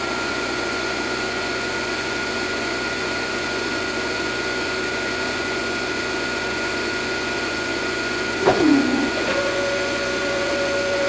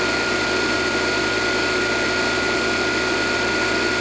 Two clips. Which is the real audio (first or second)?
second